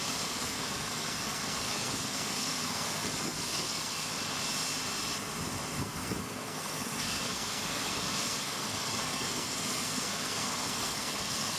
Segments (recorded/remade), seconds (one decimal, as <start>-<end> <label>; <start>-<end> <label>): 0.0-4.1 remade; 4.1-5.8 recorded; 5.8-11.6 remade